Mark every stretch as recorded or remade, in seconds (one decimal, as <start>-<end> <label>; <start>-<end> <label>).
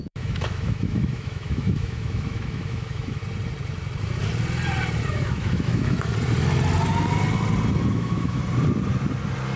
0.0-3.2 remade; 3.2-5.1 recorded; 5.1-6.1 remade; 6.1-7.9 recorded; 7.9-8.4 remade; 8.4-9.6 recorded